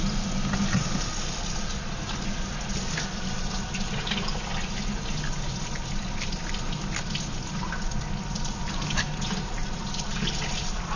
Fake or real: real